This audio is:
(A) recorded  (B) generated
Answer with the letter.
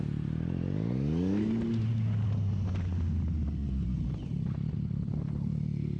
A